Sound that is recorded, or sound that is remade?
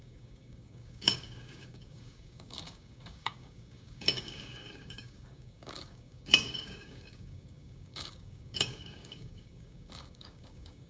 remade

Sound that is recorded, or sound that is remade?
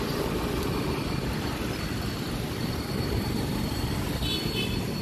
recorded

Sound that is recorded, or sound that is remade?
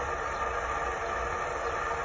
recorded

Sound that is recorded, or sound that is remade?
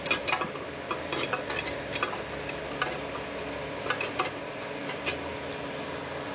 recorded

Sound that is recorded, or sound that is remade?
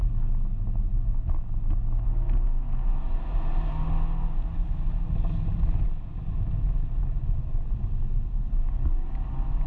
recorded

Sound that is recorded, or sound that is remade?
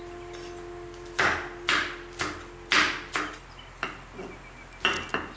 recorded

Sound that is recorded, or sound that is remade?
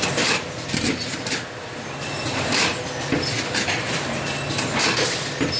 recorded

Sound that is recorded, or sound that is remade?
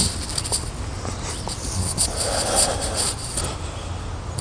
recorded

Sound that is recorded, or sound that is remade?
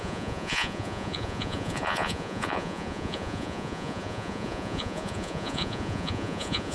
remade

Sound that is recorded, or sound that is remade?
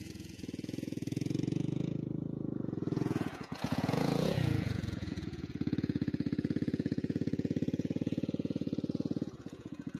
remade